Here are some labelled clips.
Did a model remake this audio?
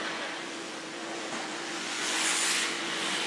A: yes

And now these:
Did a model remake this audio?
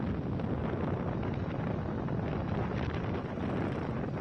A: no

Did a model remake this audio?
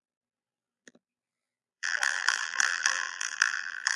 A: yes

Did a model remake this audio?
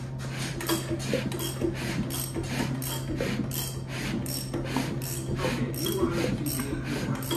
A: no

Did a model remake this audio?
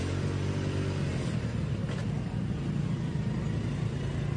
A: no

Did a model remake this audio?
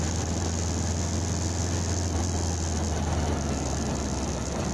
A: no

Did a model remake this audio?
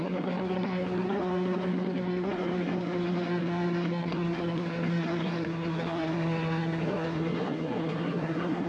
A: yes